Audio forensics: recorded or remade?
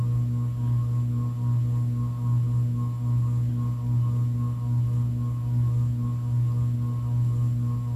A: recorded